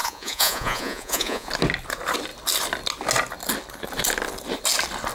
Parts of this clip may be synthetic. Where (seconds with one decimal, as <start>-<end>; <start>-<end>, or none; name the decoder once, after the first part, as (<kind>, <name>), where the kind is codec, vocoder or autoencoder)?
0.0-1.5 (vocoder, Vocos)